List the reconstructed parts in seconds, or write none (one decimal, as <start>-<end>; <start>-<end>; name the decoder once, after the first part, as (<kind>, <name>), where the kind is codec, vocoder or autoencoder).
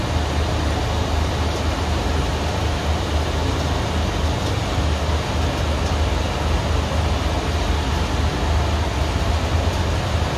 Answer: none